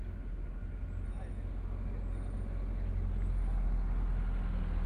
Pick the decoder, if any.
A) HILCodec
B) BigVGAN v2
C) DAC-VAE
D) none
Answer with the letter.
D